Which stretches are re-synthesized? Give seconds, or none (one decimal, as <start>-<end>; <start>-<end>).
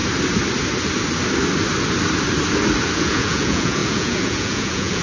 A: 3.0-5.0